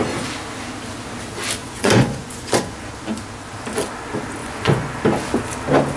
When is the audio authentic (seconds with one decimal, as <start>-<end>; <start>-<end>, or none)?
0.0-1.6; 2.9-4.4; 5.0-6.0